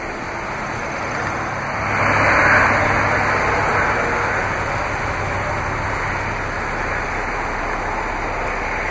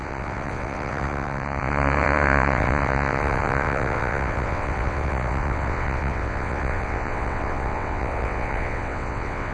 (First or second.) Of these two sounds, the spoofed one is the second